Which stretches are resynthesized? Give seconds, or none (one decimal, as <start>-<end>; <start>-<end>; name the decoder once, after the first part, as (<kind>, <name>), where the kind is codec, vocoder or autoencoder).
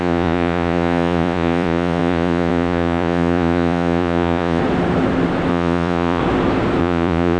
0.0-4.6 (vocoder, Vocos); 5.5-6.2; 6.8-7.4